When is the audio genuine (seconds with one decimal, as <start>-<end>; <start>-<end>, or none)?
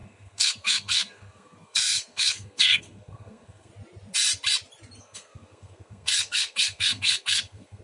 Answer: 3.7-5.0